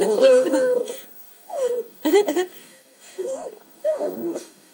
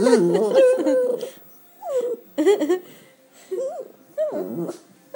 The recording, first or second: second